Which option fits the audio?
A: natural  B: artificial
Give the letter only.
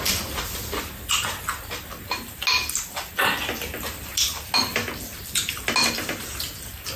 A